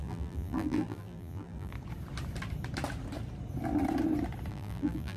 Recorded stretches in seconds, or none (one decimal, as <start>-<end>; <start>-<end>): 1.7-4.5